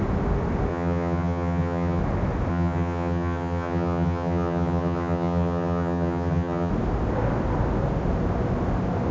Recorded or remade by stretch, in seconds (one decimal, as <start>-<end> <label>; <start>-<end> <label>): 0.0-0.7 recorded; 0.7-2.0 remade; 2.0-2.5 recorded; 2.5-6.7 remade; 6.7-9.1 recorded